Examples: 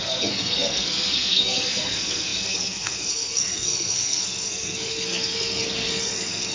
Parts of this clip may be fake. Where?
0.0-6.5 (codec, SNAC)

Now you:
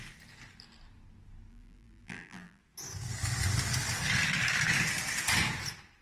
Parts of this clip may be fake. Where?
1.5-2.6 (vocoder, BigVGAN v2)